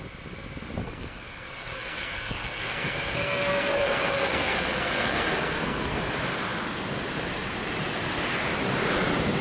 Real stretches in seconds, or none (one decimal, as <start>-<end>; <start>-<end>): 0.0-0.8; 6.0-9.4